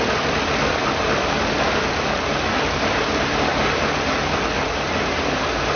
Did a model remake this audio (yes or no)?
no